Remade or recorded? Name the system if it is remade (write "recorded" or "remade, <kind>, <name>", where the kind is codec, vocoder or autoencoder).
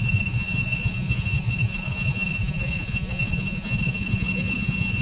remade, vocoder, Vocos